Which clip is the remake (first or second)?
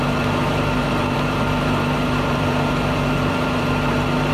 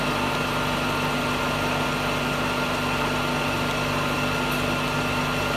first